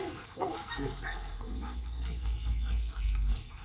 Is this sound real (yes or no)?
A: no